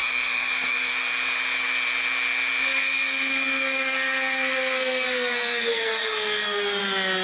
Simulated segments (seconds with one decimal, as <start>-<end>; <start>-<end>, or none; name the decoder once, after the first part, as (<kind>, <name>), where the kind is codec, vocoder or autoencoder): 0.0-0.9 (codec, SNAC); 2.6-6.8